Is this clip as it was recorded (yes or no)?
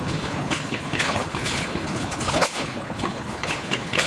no